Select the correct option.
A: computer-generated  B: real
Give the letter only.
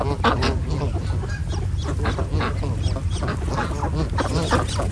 B